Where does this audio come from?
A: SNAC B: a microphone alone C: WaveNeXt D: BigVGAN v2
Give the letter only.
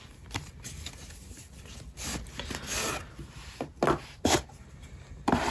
B